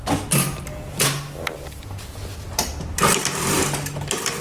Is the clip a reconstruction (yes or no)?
no